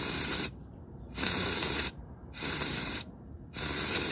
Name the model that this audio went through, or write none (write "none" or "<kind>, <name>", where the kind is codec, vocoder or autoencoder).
vocoder, BigVGAN v2